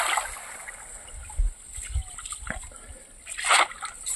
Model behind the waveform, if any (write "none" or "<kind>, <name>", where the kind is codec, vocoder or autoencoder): none